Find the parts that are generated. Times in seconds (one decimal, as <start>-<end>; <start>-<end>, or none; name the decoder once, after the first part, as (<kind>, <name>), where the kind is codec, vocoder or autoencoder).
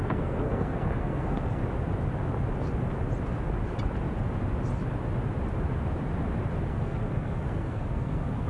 0.0-1.6 (codec, SNAC); 6.7-8.5